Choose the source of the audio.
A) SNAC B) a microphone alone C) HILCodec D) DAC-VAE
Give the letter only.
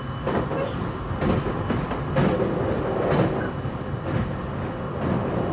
B